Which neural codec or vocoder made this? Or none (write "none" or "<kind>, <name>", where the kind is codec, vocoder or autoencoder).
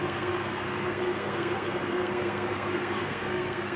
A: codec, SNAC